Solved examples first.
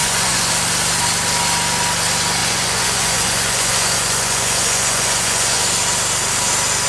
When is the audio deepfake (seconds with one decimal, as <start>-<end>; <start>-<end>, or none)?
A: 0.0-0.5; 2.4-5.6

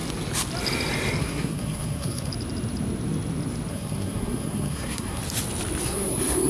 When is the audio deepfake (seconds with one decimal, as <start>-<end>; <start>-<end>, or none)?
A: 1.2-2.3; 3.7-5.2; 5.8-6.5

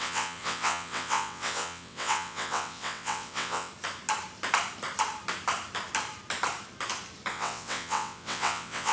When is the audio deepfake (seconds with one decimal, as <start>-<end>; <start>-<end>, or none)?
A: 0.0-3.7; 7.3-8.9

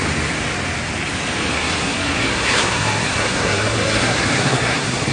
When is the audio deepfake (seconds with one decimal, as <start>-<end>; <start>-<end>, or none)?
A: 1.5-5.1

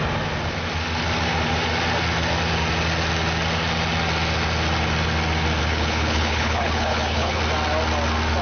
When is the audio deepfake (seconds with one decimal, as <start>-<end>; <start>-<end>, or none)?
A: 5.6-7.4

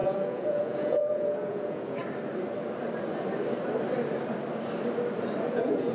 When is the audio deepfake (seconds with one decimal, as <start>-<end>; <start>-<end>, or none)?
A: 0.0-2.0; 5.5-5.9